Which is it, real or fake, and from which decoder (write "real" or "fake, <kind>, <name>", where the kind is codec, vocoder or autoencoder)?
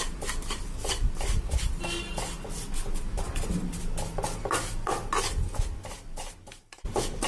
real